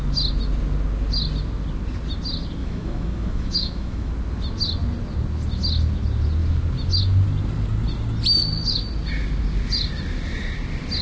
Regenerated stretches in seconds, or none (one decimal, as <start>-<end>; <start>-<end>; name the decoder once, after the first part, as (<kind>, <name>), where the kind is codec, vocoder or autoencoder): 2.6-4.1 (autoencoder, DAC-VAE)